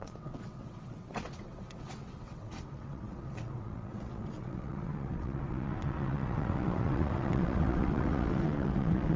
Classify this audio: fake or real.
fake